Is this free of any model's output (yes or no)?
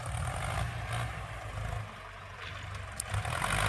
yes